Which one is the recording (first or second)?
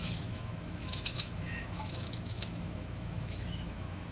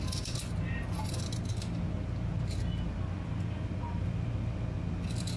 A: second